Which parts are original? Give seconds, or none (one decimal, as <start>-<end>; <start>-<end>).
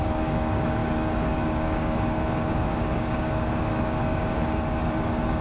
none